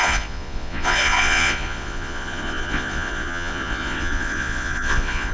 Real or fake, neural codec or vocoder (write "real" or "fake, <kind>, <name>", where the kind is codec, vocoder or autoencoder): fake, vocoder, Vocos